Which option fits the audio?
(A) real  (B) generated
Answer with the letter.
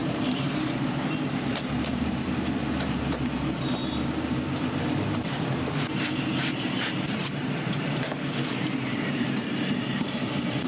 B